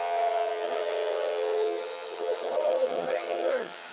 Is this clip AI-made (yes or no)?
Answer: yes